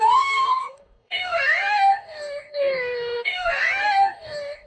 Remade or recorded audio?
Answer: remade